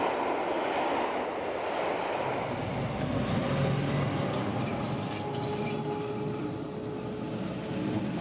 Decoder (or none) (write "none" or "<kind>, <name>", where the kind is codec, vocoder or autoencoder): none